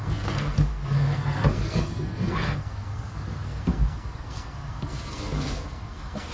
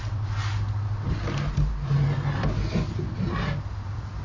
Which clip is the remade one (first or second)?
first